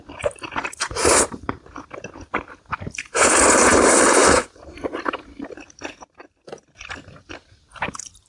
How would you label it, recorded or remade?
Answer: recorded